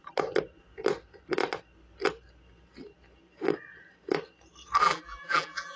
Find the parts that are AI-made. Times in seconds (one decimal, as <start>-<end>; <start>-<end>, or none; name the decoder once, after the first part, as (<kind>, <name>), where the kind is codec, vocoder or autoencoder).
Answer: 4.8-5.8 (vocoder, BigVGAN v2)

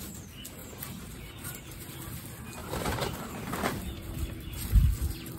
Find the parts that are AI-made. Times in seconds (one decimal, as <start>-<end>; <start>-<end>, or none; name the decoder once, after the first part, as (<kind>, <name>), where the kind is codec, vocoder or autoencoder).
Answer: 0.6-1.9 (vocoder, BigVGAN v2); 2.6-3.5

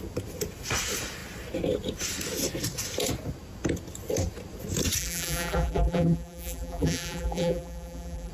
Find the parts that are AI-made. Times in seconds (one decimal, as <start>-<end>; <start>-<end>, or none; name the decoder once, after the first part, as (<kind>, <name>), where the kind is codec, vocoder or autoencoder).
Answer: 5.0-8.3 (vocoder, BigVGAN v2)

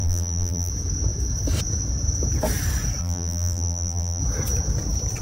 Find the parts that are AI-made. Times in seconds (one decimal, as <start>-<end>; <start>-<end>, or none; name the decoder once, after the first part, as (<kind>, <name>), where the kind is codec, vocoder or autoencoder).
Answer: 0.0-0.7 (vocoder, BigVGAN v2); 3.0-4.2

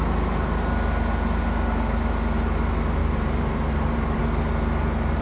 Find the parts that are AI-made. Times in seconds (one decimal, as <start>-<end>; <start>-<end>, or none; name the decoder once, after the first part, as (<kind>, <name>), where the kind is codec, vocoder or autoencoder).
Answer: 3.0-4.2 (vocoder, BigVGAN v2)

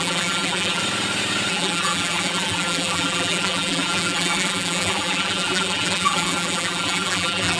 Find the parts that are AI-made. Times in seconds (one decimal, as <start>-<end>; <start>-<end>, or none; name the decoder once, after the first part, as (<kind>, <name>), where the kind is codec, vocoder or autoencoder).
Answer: 0.0-0.8 (vocoder, BigVGAN v2); 1.5-7.6

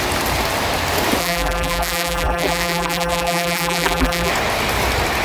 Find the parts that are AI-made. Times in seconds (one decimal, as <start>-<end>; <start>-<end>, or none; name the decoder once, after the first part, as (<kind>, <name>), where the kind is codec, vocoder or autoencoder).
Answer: 1.2-4.3 (vocoder, BigVGAN v2)

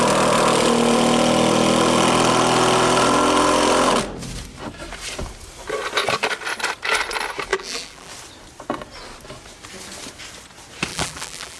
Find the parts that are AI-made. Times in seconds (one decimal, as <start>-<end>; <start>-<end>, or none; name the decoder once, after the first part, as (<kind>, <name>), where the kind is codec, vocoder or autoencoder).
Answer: 7.5-8.1 (vocoder, BigVGAN v2); 10.9-11.6